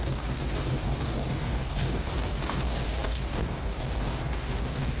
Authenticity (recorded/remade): remade